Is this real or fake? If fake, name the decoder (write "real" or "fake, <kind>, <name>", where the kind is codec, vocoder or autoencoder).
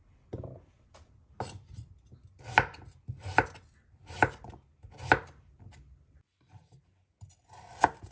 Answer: real